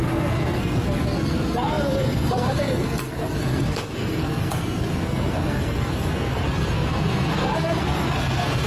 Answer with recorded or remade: remade